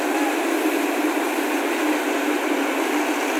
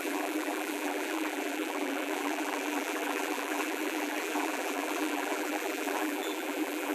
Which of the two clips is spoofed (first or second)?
second